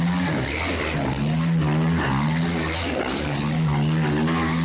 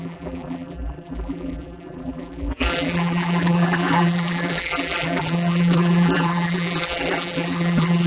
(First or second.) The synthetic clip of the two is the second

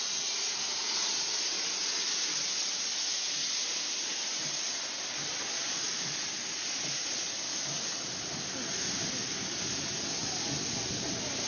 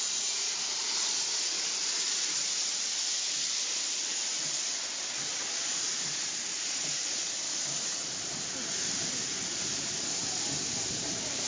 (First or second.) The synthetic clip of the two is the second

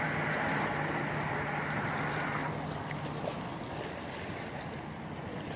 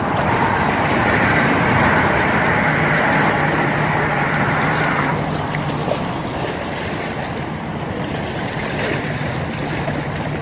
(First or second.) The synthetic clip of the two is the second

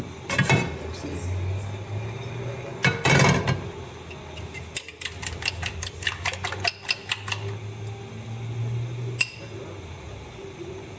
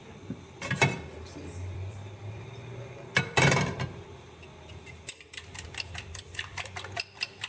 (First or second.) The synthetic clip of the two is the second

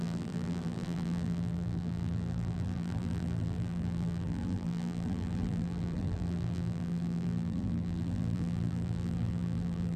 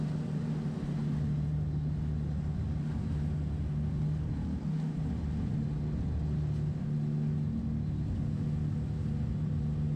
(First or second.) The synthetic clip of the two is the first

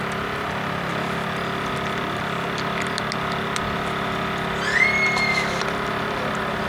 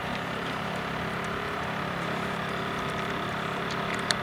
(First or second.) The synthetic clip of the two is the second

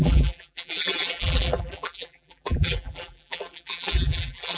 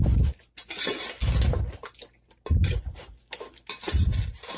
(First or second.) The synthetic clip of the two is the first